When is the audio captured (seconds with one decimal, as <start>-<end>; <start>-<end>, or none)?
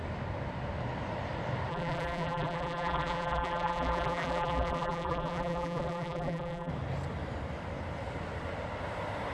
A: 0.0-1.7; 6.7-9.3